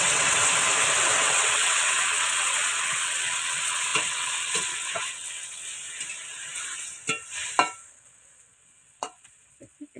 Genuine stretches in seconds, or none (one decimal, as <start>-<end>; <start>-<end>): 0.5-1.0; 5.7-7.9